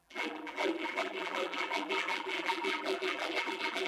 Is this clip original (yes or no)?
no